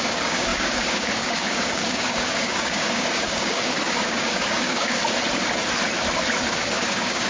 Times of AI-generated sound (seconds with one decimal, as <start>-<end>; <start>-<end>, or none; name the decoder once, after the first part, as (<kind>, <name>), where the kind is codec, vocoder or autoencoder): 0.0-5.0 (codec, DAC); 6.5-7.3